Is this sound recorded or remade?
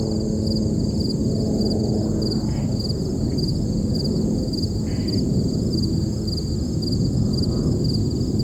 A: recorded